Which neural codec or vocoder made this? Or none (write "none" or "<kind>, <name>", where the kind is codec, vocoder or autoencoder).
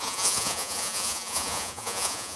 vocoder, Vocos